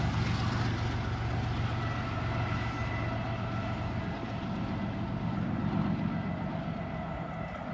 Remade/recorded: recorded